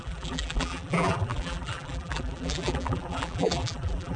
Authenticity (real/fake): fake